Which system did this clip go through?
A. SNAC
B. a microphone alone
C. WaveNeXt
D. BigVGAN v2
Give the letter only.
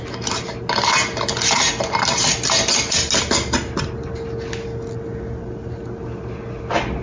B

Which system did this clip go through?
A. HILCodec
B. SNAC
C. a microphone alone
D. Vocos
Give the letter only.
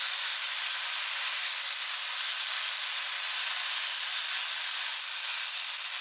C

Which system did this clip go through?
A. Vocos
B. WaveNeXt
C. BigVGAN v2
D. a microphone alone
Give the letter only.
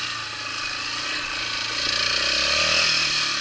D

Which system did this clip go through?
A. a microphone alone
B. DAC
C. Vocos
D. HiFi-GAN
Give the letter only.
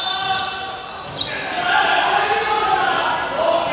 A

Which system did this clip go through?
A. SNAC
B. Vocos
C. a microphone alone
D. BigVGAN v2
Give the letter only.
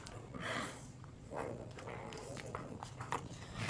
B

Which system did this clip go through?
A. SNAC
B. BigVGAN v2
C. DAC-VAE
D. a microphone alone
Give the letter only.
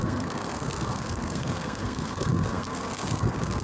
A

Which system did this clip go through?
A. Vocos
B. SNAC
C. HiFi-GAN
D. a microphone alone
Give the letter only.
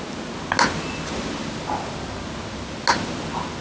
D